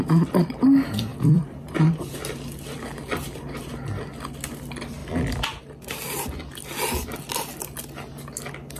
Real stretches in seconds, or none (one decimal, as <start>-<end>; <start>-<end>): 0.0-1.1; 4.0-5.0; 5.6-8.8